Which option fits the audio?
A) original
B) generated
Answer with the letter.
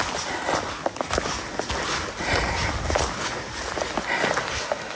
A